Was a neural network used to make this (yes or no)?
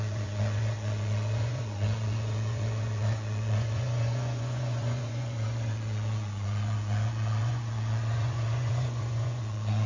yes